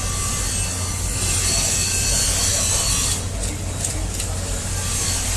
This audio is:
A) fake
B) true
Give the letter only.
B